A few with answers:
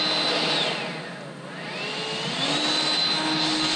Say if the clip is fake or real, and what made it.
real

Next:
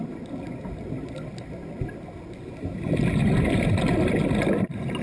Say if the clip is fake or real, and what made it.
real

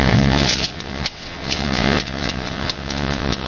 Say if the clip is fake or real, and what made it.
fake, vocoder, WaveNeXt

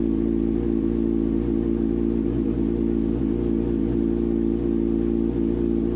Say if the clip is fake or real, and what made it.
real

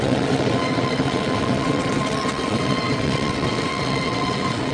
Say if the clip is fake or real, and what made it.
fake, vocoder, WaveNeXt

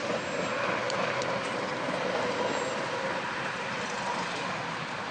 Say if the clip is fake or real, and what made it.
real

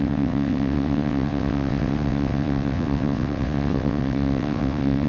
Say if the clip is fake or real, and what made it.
fake, vocoder, WaveNeXt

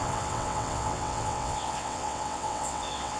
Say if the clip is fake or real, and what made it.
fake, vocoder, WaveNeXt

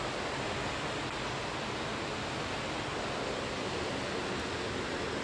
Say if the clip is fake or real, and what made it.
real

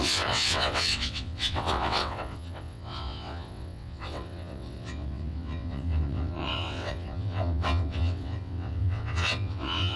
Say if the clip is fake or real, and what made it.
fake, vocoder, WaveNeXt